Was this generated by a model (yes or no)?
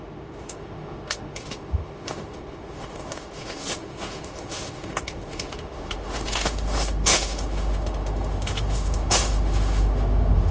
yes